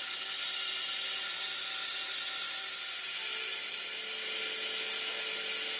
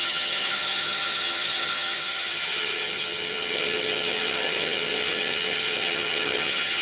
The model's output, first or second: second